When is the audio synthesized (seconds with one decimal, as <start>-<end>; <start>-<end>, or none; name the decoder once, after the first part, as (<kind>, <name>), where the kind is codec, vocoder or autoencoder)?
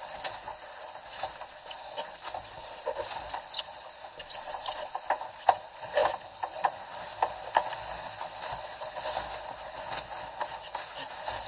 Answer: none